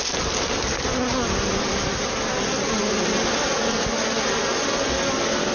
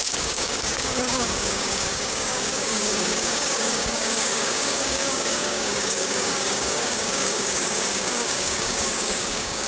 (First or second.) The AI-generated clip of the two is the second